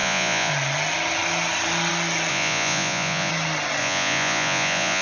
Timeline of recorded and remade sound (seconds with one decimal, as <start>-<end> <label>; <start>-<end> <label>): 0.0-0.5 remade; 0.5-2.3 recorded; 2.3-3.3 remade; 3.3-3.8 recorded; 3.8-5.0 remade